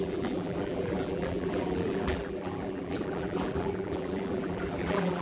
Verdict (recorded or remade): remade